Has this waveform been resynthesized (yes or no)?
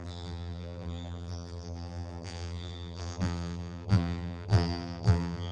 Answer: yes